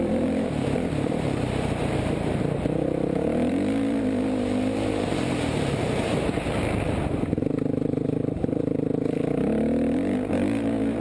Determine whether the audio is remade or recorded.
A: remade